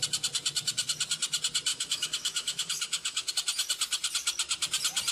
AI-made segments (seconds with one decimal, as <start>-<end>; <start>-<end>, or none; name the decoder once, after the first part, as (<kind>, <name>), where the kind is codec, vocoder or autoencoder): 1.7-3.3 (autoencoder, DAC-VAE)